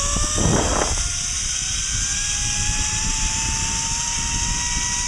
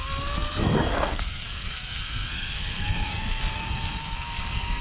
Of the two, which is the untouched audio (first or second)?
first